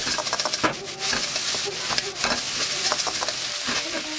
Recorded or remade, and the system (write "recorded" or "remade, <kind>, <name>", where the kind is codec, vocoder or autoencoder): recorded